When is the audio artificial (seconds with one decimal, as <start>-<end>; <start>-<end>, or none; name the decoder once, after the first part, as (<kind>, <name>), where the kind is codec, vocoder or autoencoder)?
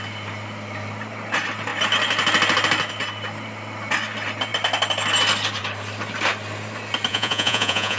7.1-8.0 (vocoder, Vocos)